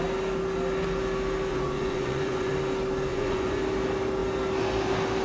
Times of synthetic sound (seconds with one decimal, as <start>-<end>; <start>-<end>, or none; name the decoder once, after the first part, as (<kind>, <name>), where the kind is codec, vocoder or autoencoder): 1.5-2.5 (vocoder, Vocos); 3.1-3.6